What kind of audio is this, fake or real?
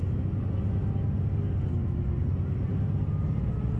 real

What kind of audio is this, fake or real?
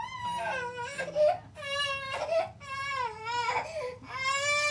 real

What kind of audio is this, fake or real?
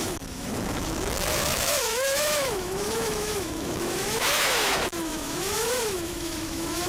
fake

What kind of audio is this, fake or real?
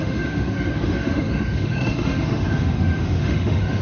fake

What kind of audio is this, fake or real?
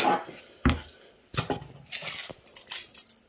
real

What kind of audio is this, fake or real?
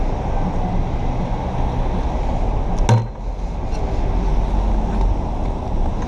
real